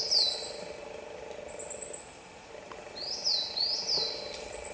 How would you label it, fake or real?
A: real